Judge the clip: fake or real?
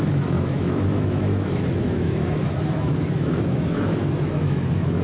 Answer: fake